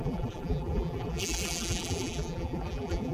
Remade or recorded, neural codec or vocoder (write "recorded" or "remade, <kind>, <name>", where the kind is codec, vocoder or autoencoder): remade, vocoder, BigVGAN v2